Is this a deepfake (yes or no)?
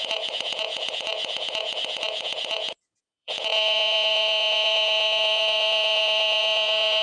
yes